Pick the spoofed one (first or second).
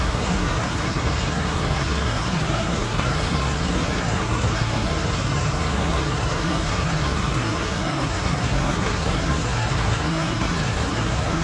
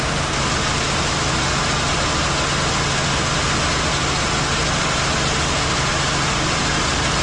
first